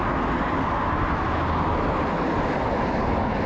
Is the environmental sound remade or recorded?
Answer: recorded